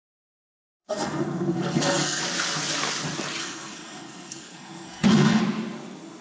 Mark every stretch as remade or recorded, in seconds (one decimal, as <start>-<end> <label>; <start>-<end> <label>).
0.0-0.8 recorded; 0.8-2.2 remade; 2.2-3.4 recorded; 3.4-5.4 remade; 5.4-6.2 recorded